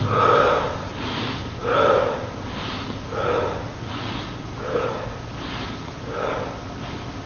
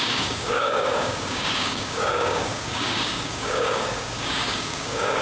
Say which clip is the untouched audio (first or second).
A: first